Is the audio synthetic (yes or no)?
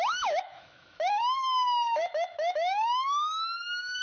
yes